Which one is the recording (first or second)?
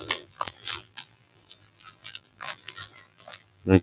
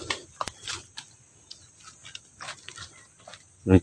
second